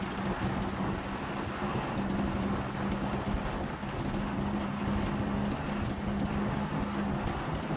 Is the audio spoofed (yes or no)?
no